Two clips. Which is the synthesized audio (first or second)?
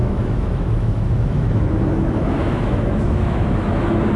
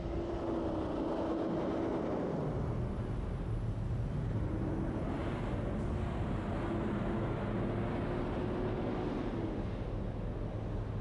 first